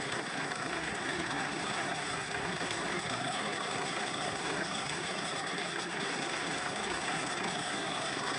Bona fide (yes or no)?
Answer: no